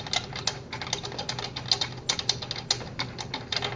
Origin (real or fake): real